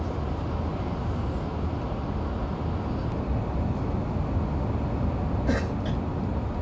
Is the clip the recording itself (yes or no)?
yes